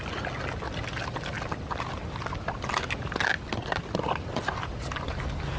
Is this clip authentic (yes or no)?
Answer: yes